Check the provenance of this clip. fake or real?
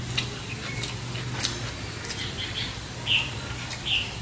real